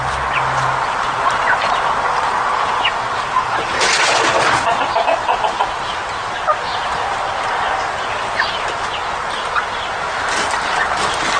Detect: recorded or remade recorded